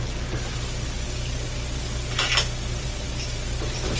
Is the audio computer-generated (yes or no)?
no